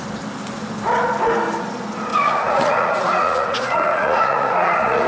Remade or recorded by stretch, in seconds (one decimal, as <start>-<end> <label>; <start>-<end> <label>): 0.0-2.1 recorded; 2.1-5.1 remade